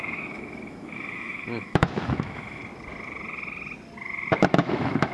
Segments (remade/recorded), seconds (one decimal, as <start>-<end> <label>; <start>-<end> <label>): 0.0-2.6 remade; 2.6-4.4 recorded; 4.4-5.1 remade